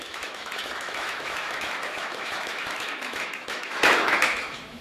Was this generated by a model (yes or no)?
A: yes